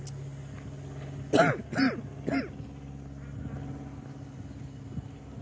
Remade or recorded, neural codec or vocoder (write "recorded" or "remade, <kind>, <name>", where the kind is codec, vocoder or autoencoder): recorded